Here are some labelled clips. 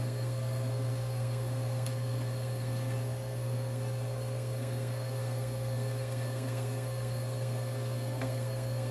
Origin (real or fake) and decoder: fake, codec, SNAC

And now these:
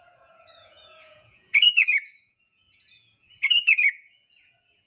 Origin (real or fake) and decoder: fake, vocoder, Vocos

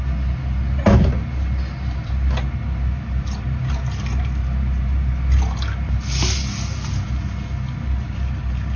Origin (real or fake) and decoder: real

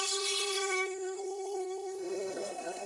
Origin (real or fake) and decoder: fake, codec, SNAC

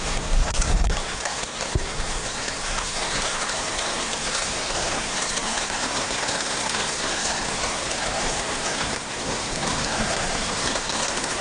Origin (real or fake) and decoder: fake, codec, SNAC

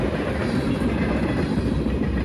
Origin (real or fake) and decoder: real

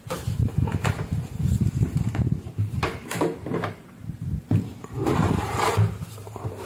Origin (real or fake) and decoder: fake, vocoder, BigVGAN v2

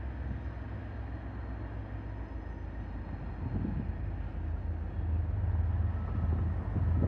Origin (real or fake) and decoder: real